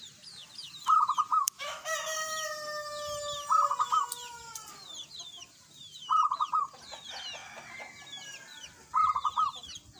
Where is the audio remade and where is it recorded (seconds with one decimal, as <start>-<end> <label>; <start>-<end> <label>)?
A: 0.0-1.3 recorded; 1.3-1.9 remade; 1.9-10.0 recorded